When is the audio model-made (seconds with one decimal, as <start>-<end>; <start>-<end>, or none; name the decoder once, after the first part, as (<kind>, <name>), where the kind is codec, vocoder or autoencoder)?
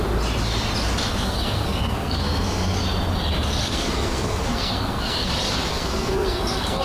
1.1-2.8 (codec, SNAC); 3.6-5.3; 5.7-6.8